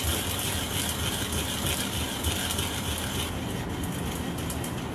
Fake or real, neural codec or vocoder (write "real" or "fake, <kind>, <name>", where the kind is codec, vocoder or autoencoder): real